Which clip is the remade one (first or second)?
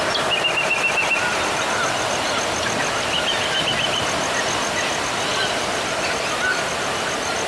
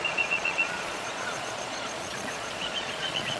second